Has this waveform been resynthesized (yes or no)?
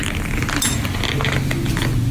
no